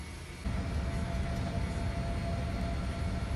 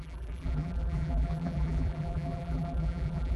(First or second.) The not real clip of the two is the second